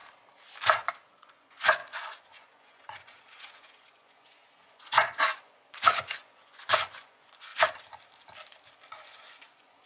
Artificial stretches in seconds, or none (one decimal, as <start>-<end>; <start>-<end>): 1.1-7.5; 8.9-9.9